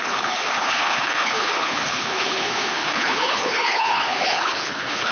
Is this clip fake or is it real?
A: fake